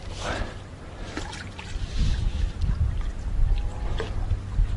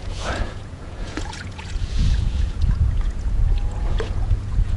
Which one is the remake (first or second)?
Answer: second